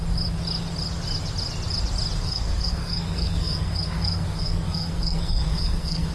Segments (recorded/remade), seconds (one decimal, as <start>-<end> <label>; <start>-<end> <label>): 0.0-2.2 recorded; 2.2-6.1 remade